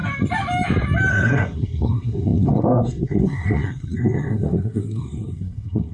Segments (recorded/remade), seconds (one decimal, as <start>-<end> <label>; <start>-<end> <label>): 0.0-1.1 recorded; 1.1-5.9 remade